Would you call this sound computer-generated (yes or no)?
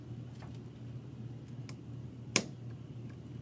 no